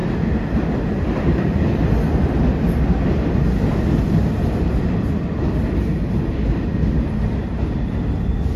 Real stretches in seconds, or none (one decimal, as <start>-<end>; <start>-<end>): 0.0-8.6